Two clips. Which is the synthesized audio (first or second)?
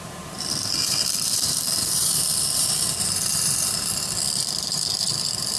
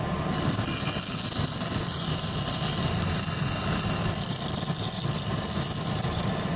first